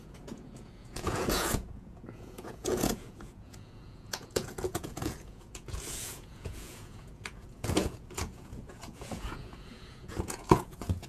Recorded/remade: remade